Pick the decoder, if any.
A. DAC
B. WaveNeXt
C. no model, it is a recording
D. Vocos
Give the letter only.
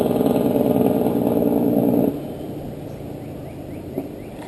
C